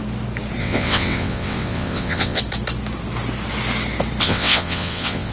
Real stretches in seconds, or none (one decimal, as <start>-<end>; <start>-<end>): 0.0-0.6; 2.4-4.2